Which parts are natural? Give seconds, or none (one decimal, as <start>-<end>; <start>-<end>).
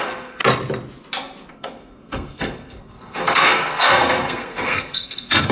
0.4-1.5